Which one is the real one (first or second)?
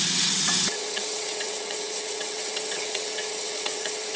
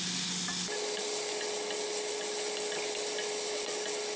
second